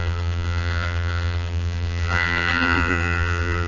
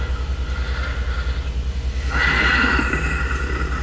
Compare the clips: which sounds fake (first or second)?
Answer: first